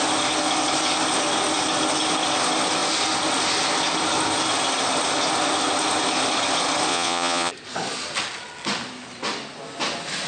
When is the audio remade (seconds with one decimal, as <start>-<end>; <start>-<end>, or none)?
6.9-7.5